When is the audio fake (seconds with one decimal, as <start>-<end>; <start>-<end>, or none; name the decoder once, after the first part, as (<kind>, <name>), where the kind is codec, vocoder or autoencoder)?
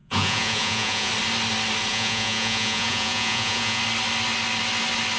0.0-1.1 (vocoder, Vocos); 1.9-3.8